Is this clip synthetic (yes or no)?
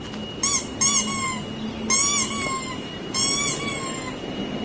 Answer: no